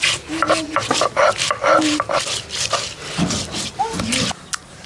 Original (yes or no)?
yes